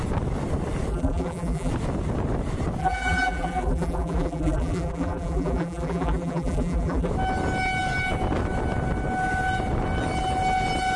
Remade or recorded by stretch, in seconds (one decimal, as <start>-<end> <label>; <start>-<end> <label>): 0.0-0.9 recorded; 0.9-1.7 remade; 1.7-2.8 recorded; 2.8-7.1 remade; 7.1-11.0 recorded